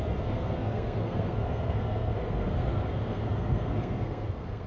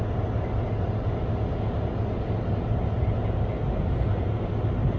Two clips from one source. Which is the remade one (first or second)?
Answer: first